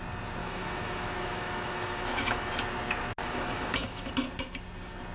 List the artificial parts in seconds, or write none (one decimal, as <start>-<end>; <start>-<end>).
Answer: 0.4-2.5; 3.2-4.1